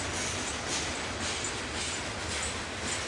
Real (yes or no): yes